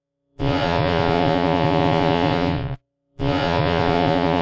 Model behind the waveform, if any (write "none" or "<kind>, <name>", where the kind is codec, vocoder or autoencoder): vocoder, Vocos